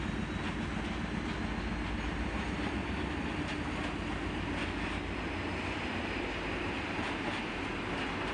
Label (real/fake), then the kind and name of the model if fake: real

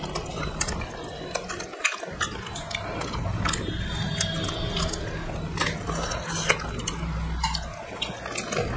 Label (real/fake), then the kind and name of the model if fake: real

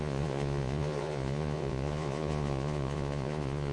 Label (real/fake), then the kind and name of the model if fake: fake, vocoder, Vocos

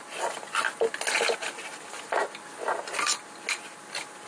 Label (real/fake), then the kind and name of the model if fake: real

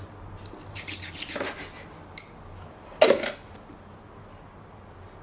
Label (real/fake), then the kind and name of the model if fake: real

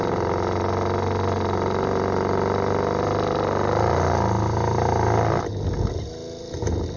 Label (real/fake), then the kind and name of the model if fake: real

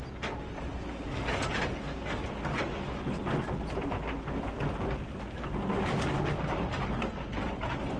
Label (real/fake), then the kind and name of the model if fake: real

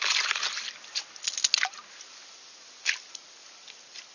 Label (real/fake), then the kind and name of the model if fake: real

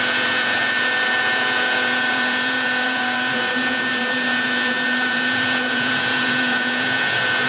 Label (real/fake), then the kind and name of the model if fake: fake, vocoder, Vocos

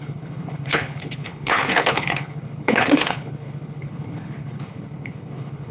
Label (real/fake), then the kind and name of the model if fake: fake, codec, HILCodec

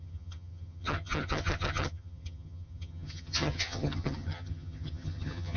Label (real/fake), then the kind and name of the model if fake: fake, vocoder, HiFi-GAN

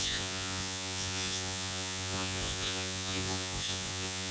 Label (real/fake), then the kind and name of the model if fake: fake, vocoder, Vocos